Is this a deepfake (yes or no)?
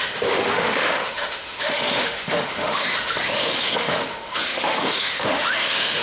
yes